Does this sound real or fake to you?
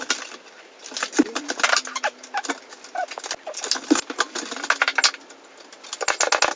real